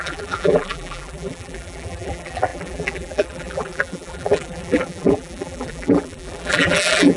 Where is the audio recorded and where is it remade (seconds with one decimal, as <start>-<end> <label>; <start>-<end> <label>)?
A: 0.0-7.2 remade